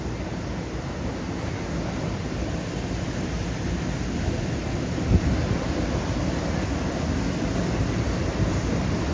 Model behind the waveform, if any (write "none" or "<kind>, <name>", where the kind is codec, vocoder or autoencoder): none